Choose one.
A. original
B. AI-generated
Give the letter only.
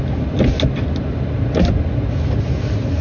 A